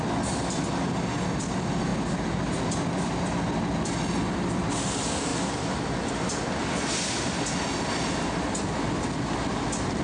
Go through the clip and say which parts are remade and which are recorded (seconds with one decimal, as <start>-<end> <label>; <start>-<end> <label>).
0.0-10.0 recorded